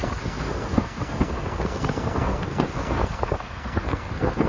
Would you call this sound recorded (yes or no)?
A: no